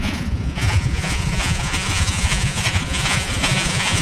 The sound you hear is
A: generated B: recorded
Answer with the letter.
A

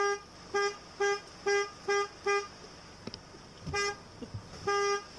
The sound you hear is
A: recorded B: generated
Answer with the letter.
A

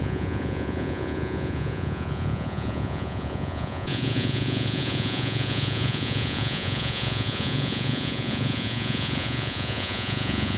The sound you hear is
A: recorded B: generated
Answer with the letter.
B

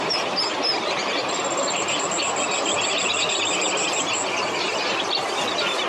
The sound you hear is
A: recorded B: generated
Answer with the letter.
A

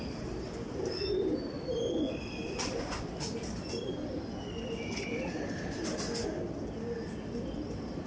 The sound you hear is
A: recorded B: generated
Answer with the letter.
A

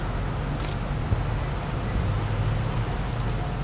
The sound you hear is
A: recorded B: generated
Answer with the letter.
A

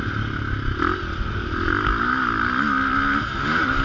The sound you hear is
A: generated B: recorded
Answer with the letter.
B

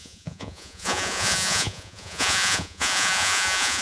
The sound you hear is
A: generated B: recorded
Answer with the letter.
A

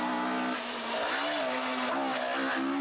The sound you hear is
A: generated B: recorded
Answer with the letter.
B